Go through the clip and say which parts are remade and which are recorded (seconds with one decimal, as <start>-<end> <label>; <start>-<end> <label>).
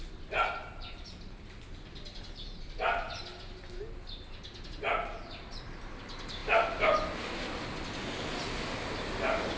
0.0-9.6 recorded